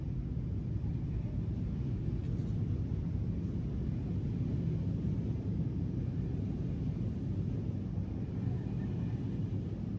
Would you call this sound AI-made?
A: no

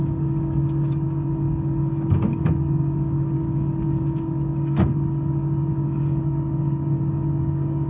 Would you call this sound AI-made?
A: yes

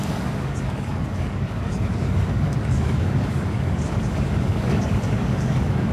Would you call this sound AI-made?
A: yes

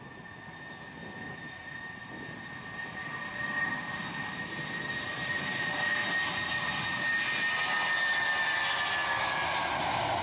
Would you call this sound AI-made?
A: no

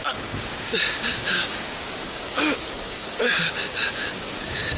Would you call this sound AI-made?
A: yes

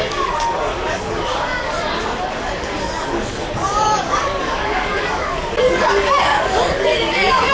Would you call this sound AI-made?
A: yes